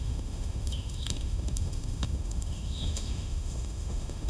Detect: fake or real fake